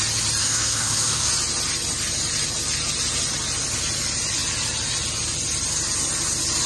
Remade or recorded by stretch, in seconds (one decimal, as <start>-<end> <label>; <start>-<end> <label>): 0.0-0.4 recorded; 0.4-1.3 remade; 1.3-6.7 recorded